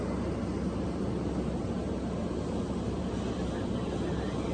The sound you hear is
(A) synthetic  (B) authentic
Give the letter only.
B